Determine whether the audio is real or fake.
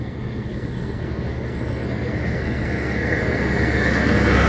fake